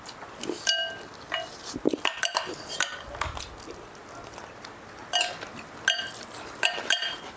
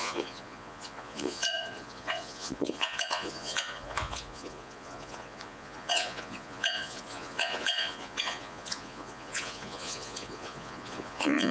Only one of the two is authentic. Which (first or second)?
first